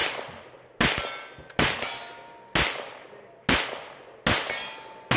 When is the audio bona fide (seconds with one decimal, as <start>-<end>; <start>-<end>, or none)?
0.0-5.2